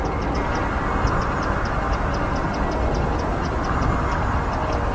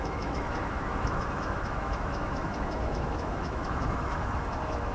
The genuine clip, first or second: first